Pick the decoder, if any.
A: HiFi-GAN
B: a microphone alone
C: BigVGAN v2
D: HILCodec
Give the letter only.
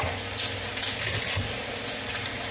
B